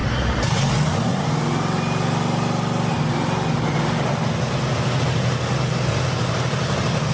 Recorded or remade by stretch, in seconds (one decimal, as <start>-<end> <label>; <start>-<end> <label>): 0.0-0.6 remade; 0.6-7.1 recorded

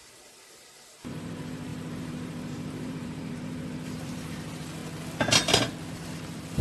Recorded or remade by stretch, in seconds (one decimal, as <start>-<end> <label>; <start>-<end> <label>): 0.0-4.8 remade; 4.8-5.9 recorded; 5.9-6.6 remade

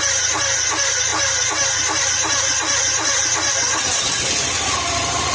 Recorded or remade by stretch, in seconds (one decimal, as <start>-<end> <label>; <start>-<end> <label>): 0.0-5.3 recorded

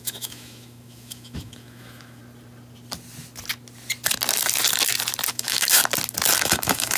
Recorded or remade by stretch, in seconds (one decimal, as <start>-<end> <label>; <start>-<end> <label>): 0.0-2.2 remade; 2.2-5.3 recorded; 5.3-5.8 remade; 5.8-6.4 recorded; 6.4-7.0 remade